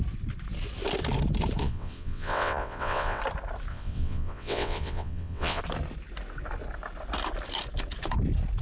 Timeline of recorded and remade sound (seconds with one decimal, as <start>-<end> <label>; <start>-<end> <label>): 0.0-1.6 recorded; 1.6-3.2 remade; 3.2-3.7 recorded; 3.7-5.6 remade; 5.6-8.6 recorded